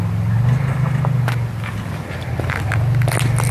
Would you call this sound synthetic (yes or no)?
no